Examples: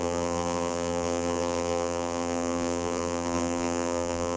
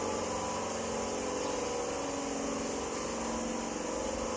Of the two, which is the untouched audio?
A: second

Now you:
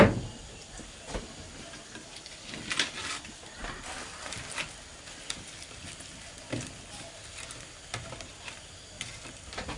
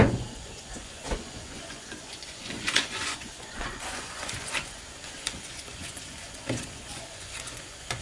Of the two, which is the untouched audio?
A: first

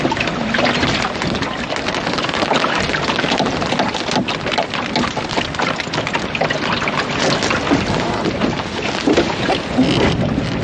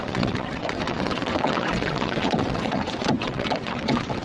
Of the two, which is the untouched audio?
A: first